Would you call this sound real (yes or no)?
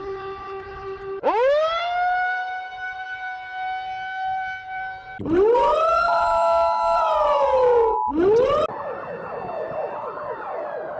yes